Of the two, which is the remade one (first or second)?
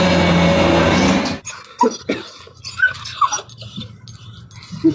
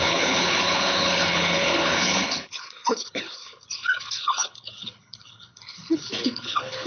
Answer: second